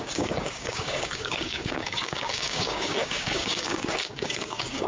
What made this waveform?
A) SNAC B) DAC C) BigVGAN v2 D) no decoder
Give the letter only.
B